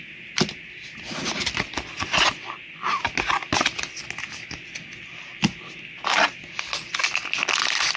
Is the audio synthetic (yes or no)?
no